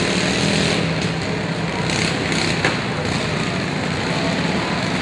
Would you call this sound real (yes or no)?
yes